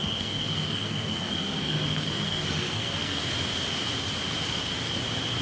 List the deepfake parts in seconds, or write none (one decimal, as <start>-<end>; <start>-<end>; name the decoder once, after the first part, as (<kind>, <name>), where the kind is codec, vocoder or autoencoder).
0.0-3.2 (codec, SNAC)